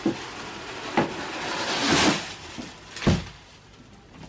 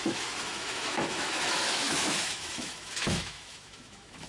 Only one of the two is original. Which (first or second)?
first